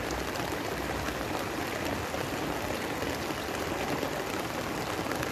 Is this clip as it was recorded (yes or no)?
yes